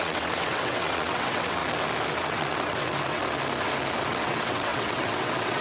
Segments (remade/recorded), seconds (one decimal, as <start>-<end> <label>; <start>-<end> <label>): 0.0-1.6 remade; 1.6-2.1 recorded; 2.1-3.2 remade; 3.2-4.1 recorded; 4.1-5.6 remade